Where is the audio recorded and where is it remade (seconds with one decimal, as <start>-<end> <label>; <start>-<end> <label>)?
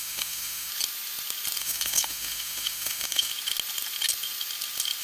0.0-0.7 remade; 0.7-1.6 recorded; 1.6-3.3 remade; 3.3-5.0 recorded